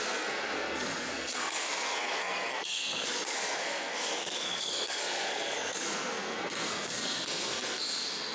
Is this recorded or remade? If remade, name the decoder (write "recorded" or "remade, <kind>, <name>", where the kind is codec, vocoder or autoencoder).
remade, codec, SNAC